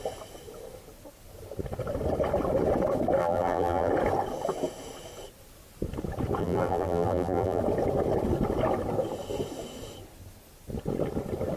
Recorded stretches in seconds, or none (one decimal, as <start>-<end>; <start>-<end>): 0.0-3.2; 3.9-6.4; 7.6-11.6